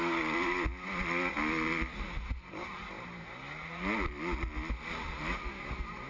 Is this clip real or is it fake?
real